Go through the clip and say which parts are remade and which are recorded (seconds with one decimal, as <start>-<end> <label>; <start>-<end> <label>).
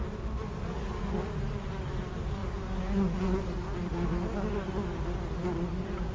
0.0-6.1 recorded